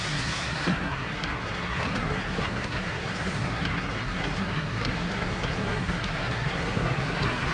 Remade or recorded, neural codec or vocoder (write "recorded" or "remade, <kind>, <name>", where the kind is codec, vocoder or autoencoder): remade, codec, SNAC